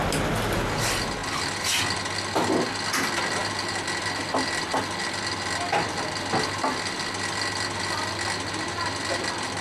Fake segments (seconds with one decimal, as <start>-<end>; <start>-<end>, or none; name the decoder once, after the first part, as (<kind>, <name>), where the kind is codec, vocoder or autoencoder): none